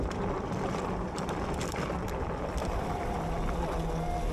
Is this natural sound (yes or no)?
yes